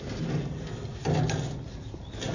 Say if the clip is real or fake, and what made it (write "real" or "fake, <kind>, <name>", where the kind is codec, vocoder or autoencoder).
real